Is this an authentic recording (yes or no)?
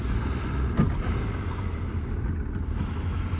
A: yes